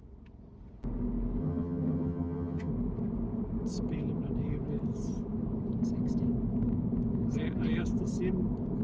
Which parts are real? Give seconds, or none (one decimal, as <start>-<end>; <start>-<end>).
0.0-1.4; 2.7-8.8